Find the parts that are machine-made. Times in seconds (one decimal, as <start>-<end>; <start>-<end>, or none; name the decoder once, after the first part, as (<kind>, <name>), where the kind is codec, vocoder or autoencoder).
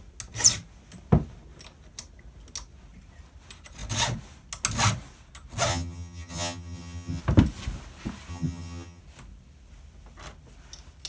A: 5.7-7.2 (vocoder, HiFi-GAN); 8.3-9.0